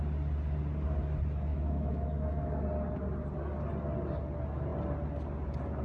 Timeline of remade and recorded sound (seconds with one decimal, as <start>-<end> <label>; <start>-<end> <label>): 0.0-1.5 recorded; 1.5-2.6 remade; 2.6-5.8 recorded